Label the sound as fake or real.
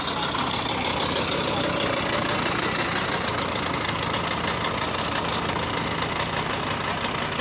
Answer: real